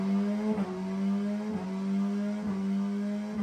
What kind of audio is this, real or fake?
real